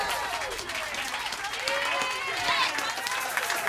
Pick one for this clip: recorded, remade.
recorded